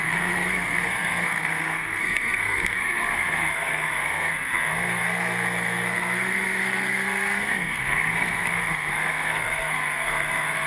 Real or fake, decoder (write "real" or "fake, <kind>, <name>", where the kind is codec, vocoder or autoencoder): fake, codec, SNAC